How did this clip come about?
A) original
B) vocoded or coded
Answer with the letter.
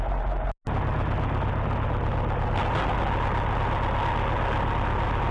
A